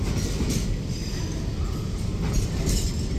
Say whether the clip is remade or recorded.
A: recorded